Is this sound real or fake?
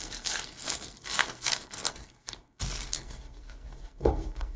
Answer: fake